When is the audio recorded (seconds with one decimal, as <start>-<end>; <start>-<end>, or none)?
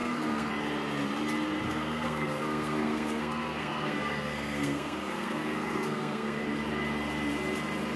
0.5-1.7; 6.4-8.0